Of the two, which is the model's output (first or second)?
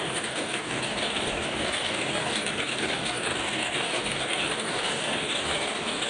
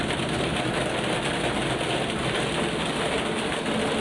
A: first